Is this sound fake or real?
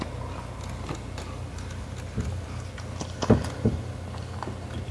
real